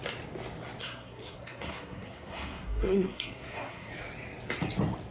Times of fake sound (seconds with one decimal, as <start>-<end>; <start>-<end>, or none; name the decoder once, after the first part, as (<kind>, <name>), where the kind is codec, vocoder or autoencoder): 0.8-3.9 (codec, SNAC)